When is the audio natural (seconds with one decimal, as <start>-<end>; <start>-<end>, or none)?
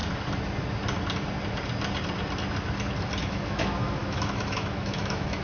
0.0-3.2